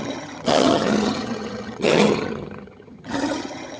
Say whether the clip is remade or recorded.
remade